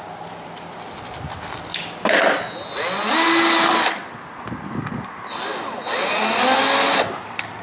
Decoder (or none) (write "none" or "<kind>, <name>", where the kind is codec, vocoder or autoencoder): none